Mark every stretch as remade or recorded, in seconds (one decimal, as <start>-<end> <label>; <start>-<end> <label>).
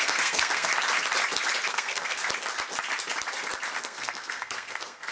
0.0-0.7 remade; 0.7-1.7 recorded; 1.7-2.2 remade; 2.2-3.8 recorded; 3.8-5.1 remade